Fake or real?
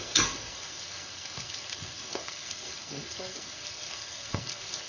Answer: fake